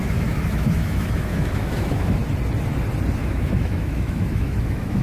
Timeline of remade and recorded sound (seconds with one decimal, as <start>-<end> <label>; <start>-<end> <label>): 0.0-2.2 remade; 2.2-3.2 recorded; 3.2-5.0 remade